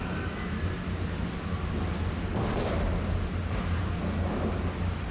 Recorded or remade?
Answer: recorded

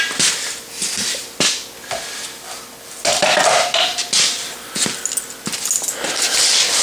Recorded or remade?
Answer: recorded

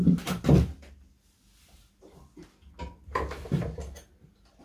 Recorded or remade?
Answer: recorded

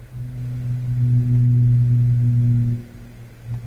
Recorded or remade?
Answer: recorded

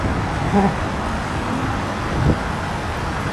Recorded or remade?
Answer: recorded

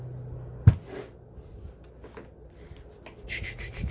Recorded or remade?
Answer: recorded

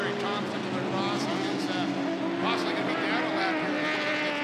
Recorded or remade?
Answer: recorded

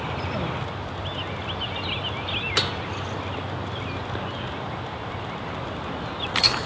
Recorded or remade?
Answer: recorded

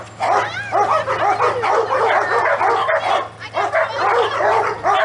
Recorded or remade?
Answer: recorded